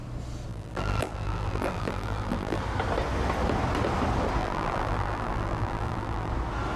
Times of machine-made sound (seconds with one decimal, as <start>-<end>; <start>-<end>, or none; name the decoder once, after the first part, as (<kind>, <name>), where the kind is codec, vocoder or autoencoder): 0.5-2.6 (vocoder, BigVGAN v2); 4.4-6.3